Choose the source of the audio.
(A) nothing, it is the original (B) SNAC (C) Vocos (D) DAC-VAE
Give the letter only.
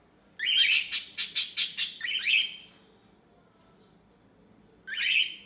A